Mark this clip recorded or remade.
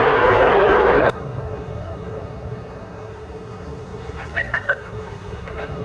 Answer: remade